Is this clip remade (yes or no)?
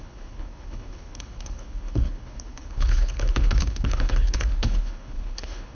yes